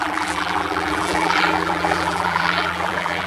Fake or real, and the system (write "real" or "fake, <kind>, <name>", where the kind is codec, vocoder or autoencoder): fake, vocoder, BigVGAN v2